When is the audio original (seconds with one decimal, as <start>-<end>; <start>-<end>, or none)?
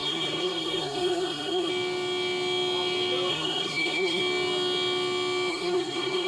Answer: 1.7-3.3; 4.2-5.5